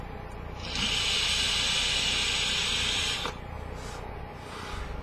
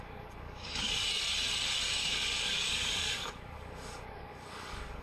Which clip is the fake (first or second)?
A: second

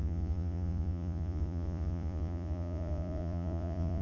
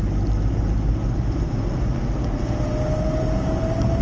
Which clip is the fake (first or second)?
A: first